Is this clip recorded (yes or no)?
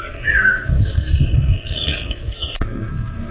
no